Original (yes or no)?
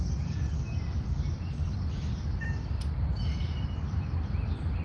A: yes